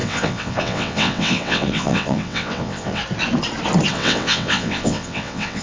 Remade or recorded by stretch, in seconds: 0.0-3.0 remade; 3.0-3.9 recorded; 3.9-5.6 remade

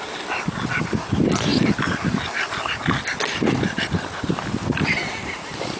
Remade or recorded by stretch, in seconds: 0.0-5.8 recorded